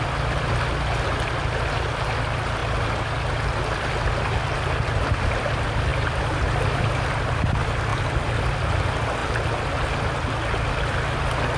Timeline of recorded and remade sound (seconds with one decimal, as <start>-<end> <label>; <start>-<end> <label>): 0.0-2.6 recorded; 2.6-3.8 remade; 3.8-5.9 recorded; 5.9-7.5 remade; 7.5-11.6 recorded